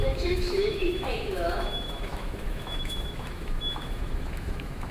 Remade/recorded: remade